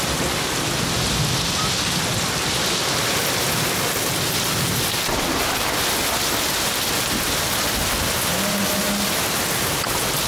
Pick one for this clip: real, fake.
real